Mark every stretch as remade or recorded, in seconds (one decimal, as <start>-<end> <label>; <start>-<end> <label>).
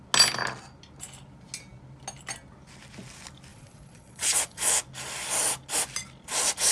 0.0-3.5 recorded; 3.5-4.7 remade; 4.7-6.7 recorded